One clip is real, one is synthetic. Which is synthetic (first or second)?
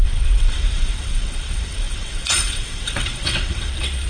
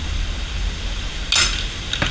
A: first